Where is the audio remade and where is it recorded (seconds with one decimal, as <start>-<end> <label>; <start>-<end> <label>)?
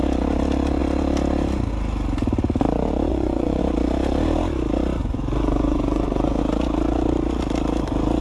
0.0-3.1 recorded; 3.1-3.6 remade; 3.6-5.0 recorded; 5.0-6.4 remade; 6.4-8.2 recorded